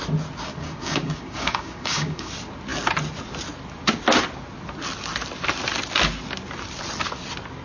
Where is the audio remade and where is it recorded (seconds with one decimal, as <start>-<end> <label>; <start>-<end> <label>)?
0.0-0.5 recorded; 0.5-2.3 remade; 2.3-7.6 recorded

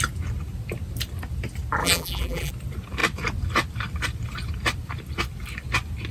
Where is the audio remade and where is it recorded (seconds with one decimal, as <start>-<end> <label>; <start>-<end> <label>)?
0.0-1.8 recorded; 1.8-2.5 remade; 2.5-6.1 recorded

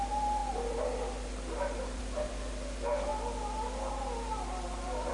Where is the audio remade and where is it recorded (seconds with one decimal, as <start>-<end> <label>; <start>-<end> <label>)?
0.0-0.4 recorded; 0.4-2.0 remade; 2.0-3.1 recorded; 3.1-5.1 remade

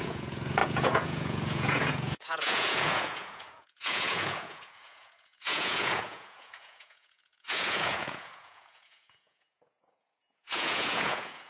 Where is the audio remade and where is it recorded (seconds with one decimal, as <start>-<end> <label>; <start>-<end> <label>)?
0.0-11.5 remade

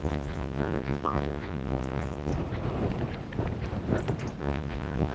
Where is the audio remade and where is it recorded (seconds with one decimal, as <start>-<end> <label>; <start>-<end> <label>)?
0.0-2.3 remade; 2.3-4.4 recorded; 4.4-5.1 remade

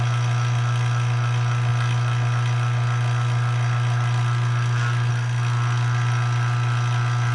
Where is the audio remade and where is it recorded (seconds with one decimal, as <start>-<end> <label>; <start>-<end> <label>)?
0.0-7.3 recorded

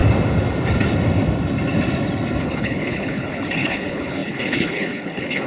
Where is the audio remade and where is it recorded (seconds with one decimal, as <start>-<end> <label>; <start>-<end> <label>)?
0.0-2.4 recorded; 2.4-5.5 remade